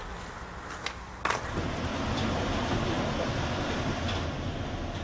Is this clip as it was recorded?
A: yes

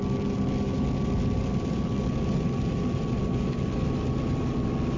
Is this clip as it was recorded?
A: yes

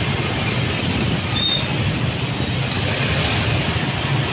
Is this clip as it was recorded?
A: yes